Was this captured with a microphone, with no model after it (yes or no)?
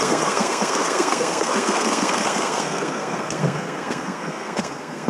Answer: no